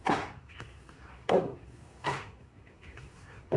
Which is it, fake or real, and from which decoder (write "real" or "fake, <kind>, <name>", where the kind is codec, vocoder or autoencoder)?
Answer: fake, codec, SNAC